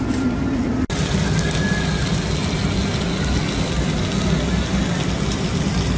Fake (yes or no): no